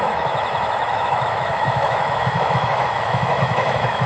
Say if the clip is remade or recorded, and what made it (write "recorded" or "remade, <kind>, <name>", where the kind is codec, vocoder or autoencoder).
remade, autoencoder, DAC-VAE